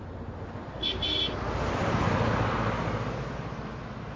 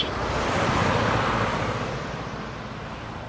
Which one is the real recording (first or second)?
first